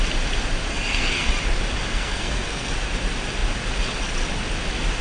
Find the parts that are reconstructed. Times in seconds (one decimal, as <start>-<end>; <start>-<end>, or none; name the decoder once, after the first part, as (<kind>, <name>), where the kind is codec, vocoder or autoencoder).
0.7-1.3 (codec, SNAC); 1.9-2.7